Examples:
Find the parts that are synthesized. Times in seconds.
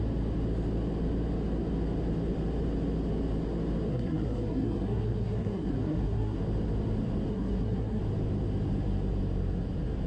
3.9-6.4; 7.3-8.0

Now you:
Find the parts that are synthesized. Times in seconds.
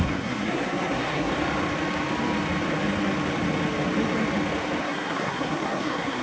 0.0-1.3; 4.8-6.2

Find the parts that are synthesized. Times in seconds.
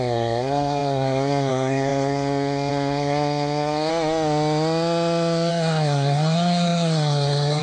0.0-3.9; 5.5-7.6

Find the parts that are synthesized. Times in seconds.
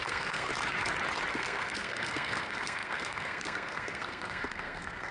0.0-0.5; 1.3-5.1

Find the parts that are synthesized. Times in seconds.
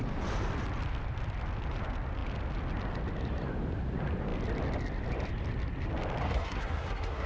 6.2-7.3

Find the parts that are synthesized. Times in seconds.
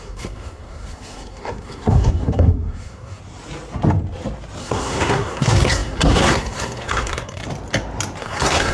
0.0-3.2; 4.6-7.4; 8.2-8.7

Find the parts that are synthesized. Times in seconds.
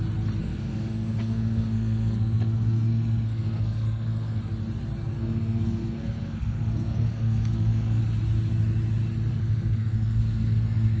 0.4-4.5; 5.1-8.0; 9.3-11.0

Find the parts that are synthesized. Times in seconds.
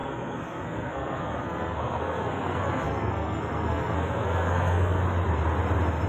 0.0-5.0